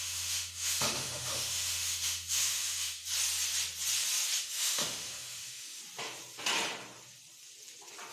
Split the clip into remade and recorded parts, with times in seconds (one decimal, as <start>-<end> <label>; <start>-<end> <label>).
0.0-3.0 remade; 3.0-4.4 recorded; 4.4-5.8 remade; 5.8-8.1 recorded